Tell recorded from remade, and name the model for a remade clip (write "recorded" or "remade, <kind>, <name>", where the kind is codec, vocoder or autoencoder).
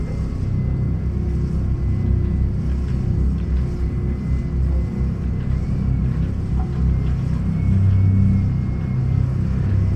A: recorded